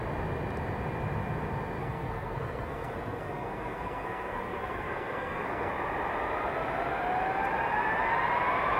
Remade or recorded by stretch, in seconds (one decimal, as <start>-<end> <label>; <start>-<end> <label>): 0.0-1.8 recorded; 1.8-5.7 remade; 5.7-8.8 recorded